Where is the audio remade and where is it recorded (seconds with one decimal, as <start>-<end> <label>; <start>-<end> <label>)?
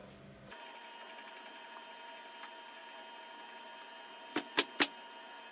0.0-5.5 recorded